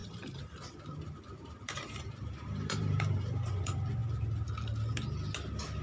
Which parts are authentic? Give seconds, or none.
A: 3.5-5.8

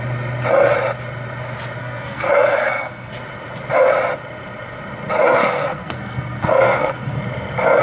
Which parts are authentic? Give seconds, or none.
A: 0.0-1.8; 3.1-5.4; 7.2-7.8

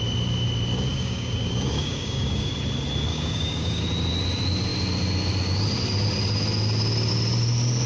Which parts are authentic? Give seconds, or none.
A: 0.0-0.9; 2.5-3.1; 3.8-7.9

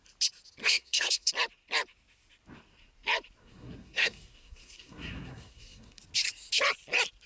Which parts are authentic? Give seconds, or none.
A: 0.0-0.6; 1.3-3.4; 6.0-7.3